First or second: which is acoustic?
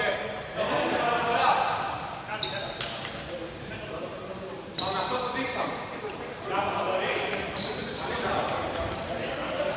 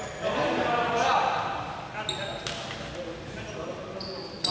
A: second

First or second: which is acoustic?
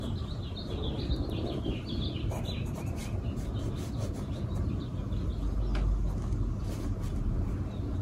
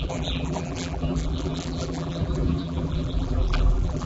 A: first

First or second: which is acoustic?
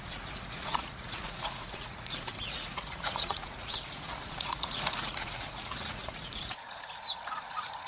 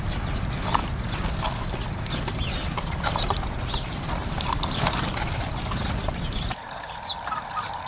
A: second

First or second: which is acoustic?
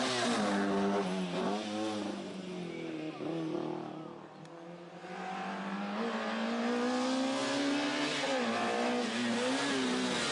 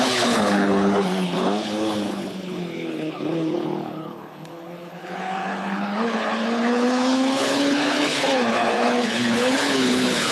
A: first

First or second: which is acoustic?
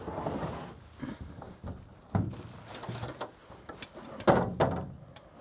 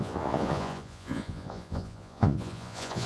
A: first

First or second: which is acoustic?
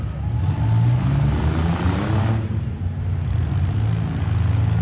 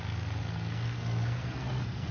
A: first